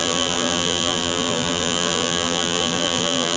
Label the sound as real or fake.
fake